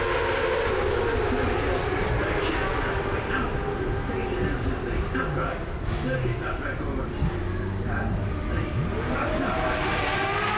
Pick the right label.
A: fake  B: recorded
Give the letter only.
B